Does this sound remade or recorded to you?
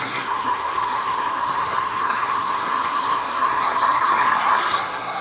remade